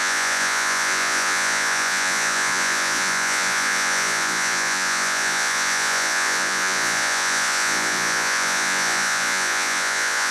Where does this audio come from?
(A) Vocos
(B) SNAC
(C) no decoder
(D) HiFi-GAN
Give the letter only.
A